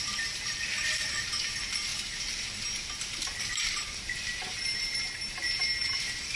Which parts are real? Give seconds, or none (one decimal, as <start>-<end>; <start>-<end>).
1.9-3.4